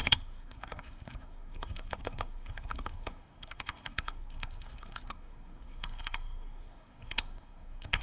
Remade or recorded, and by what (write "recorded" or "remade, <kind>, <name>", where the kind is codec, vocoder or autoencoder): remade, codec, SNAC